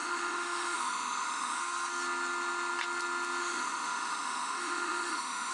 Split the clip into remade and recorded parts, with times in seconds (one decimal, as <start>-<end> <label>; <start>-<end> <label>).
0.0-1.6 remade; 1.6-3.4 recorded; 3.4-5.5 remade